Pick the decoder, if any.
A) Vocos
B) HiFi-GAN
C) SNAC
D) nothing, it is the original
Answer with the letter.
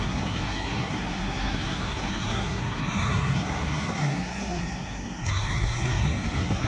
C